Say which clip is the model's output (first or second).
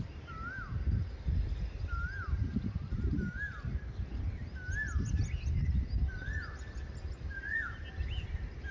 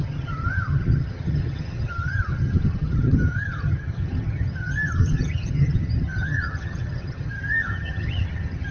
second